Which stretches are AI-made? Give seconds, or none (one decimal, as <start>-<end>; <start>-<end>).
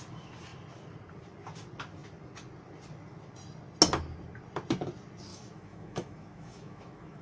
5.3-7.2